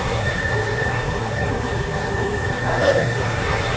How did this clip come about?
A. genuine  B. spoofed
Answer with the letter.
B